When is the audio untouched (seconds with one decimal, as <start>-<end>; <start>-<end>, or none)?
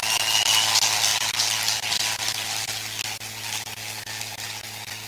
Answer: 0.0-5.1